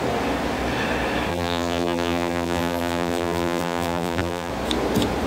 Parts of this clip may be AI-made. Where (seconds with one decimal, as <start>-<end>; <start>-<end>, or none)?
1.3-4.5